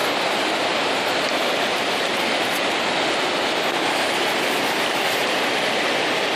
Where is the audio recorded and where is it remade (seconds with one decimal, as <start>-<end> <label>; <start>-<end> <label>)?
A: 0.0-6.4 recorded